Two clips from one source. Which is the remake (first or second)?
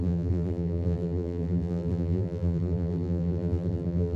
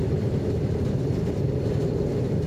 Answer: first